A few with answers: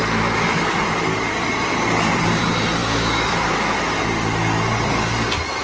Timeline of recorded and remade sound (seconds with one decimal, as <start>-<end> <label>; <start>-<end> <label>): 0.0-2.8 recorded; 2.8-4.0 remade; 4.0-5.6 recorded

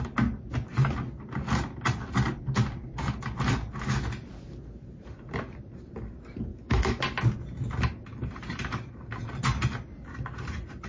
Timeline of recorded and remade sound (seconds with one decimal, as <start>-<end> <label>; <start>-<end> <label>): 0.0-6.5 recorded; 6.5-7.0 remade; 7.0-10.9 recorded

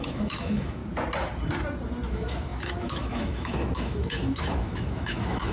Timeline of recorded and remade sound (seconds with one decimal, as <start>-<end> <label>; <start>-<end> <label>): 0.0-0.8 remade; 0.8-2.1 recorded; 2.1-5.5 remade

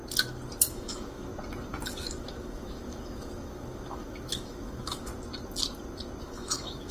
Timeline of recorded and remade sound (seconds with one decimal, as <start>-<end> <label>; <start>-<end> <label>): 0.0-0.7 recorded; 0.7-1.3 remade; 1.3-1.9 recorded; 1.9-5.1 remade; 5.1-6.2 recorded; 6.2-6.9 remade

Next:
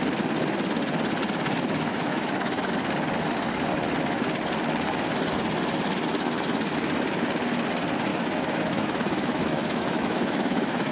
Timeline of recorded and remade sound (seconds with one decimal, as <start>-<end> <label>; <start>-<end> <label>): 0.0-1.9 recorded; 1.9-2.7 remade; 2.7-8.1 recorded; 8.1-10.9 remade